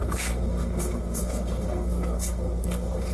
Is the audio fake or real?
fake